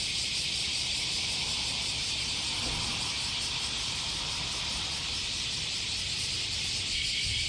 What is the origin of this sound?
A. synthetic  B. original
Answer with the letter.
B